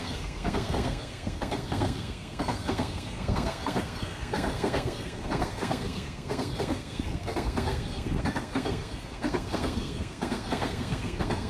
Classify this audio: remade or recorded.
remade